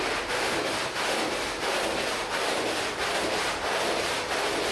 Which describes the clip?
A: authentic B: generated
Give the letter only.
A